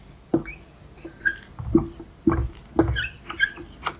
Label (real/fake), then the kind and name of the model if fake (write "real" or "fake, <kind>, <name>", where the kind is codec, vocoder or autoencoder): real